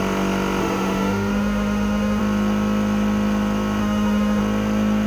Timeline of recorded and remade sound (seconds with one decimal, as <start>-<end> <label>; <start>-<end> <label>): 0.0-0.6 recorded; 0.6-2.2 remade; 2.2-3.8 recorded; 3.8-4.4 remade; 4.4-5.1 recorded